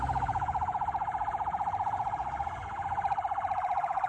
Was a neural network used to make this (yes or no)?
no